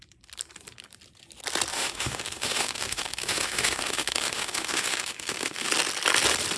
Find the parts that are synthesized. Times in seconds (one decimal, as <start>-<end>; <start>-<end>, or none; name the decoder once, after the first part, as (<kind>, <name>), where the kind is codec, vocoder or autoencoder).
1.7-5.7 (autoencoder, DAC-VAE)

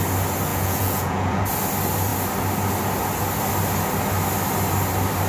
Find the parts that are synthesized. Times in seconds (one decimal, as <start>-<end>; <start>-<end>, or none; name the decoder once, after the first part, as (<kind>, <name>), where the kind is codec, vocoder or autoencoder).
0.5-1.4 (vocoder, Vocos)